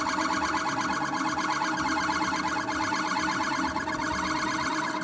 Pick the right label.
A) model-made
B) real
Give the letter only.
B